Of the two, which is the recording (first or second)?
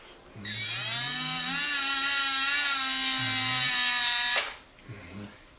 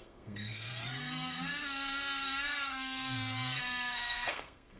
first